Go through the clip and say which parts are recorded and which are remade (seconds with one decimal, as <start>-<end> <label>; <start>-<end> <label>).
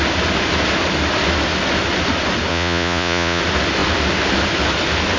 0.0-2.5 recorded; 2.5-3.4 remade; 3.4-5.2 recorded